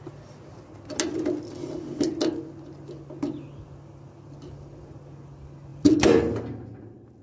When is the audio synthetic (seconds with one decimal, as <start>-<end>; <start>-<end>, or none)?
5.7-6.2